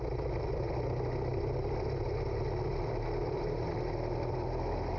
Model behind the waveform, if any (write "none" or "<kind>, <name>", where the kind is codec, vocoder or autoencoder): none